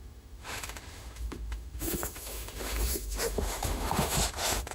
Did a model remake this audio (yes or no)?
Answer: yes